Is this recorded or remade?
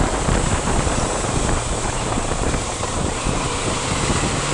remade